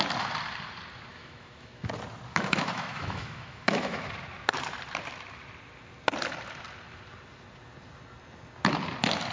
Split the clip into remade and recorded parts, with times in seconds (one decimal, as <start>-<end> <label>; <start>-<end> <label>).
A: 0.0-1.1 recorded; 1.1-1.9 remade; 1.9-2.3 recorded; 2.3-4.1 remade; 4.1-9.3 recorded